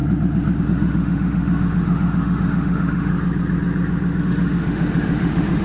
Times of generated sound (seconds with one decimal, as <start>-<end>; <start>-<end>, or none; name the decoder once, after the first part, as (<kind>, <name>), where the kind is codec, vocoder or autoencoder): 0.6-3.1 (autoencoder, DAC-VAE); 4.2-5.6